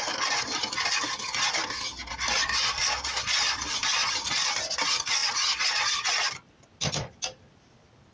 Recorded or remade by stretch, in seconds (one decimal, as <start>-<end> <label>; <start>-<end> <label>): 0.0-8.1 recorded